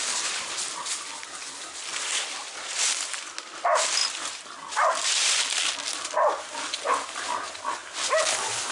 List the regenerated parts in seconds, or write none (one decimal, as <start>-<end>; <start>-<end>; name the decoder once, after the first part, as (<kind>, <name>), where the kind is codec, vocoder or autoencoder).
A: 1.9-3.3 (vocoder, BigVGAN v2)

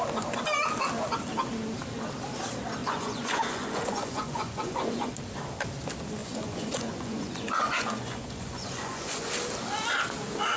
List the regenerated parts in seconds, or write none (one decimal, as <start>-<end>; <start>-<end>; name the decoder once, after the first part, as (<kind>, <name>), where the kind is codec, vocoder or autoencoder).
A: 2.8-5.1 (vocoder, Vocos); 6.2-9.3

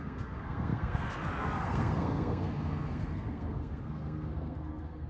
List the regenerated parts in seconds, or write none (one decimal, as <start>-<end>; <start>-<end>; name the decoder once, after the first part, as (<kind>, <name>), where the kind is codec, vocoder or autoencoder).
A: 0.0-5.1 (codec, SNAC)

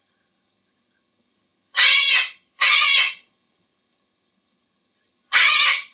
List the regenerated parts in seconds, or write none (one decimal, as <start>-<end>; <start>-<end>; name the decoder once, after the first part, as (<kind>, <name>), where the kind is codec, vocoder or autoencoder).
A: 0.0-5.9 (vocoder, HiFi-GAN)

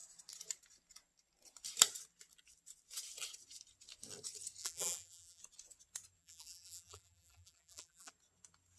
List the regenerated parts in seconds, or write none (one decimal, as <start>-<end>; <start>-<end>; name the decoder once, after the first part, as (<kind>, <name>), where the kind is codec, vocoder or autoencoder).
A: 4.6-5.4 (vocoder, BigVGAN v2); 6.2-8.1

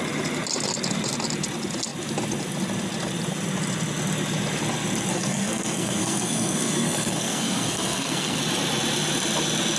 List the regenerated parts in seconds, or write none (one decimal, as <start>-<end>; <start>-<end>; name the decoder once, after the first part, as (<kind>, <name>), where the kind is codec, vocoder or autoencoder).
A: 5.1-8.4 (codec, SNAC)

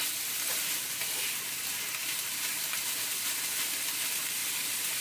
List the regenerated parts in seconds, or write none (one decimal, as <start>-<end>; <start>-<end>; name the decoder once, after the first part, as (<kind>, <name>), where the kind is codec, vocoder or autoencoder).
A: 2.0-2.8 (vocoder, BigVGAN v2)